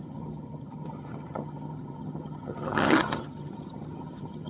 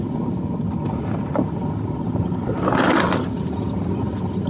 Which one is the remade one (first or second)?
first